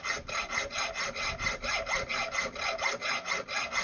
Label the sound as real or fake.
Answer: real